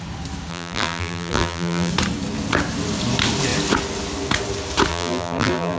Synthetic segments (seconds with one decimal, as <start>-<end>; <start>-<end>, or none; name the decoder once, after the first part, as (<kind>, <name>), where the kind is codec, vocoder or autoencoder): 0.5-1.9 (vocoder, BigVGAN v2); 4.9-5.8